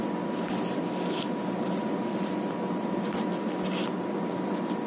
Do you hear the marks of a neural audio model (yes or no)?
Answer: no